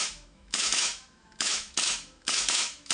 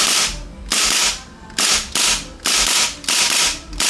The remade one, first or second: first